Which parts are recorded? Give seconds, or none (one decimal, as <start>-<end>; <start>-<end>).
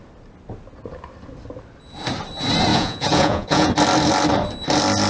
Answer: 0.0-2.7; 3.7-5.1